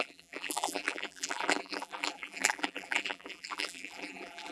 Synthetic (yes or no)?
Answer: yes